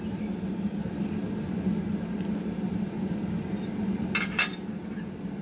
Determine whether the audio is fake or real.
real